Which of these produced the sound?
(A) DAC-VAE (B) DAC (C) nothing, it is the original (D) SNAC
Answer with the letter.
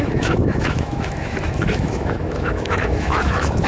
A